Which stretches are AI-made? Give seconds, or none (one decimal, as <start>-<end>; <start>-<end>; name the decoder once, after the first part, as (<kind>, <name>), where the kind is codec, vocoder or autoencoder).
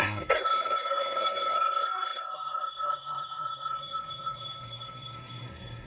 0.0-5.9 (codec, SNAC)